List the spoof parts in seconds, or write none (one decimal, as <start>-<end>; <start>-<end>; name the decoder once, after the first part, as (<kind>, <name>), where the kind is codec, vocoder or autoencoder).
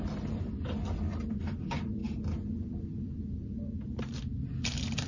none